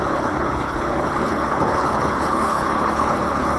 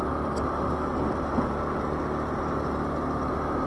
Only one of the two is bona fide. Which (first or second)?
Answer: second